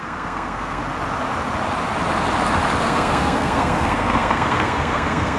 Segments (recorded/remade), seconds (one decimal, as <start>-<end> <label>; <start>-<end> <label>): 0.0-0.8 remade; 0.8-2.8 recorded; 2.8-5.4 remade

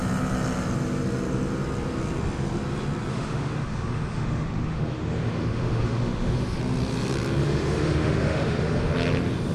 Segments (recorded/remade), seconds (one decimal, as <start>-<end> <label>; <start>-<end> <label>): 0.0-3.1 recorded; 3.1-6.6 remade; 6.6-7.4 recorded; 7.4-8.9 remade; 8.9-9.5 recorded

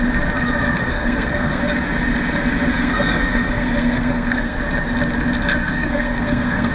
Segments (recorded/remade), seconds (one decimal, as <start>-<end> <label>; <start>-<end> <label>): 0.0-0.8 recorded; 0.8-1.6 remade; 1.6-2.7 recorded; 2.7-4.6 remade; 4.6-5.5 recorded; 5.5-6.7 remade

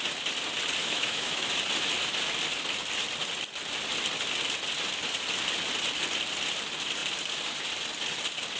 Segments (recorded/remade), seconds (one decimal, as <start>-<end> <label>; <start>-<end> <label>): 0.0-0.8 recorded; 0.8-1.5 remade; 1.5-8.6 recorded

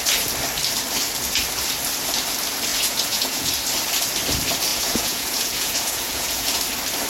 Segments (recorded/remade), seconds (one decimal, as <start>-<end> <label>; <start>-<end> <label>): 0.0-2.7 recorded; 2.7-3.5 remade; 3.5-4.7 recorded; 4.7-6.6 remade; 6.6-7.1 recorded

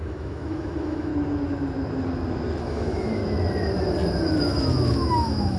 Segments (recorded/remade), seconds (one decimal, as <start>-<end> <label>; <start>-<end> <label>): 0.0-1.1 remade; 1.1-2.6 recorded; 2.6-3.2 remade; 3.2-4.4 recorded; 4.4-5.6 remade